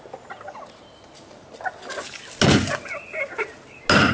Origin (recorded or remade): recorded